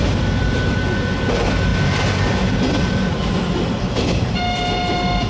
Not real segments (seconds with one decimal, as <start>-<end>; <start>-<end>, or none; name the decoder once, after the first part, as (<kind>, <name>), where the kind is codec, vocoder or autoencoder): 0.0-1.0 (vocoder, BigVGAN v2); 3.1-5.3